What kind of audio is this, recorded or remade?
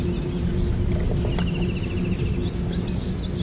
recorded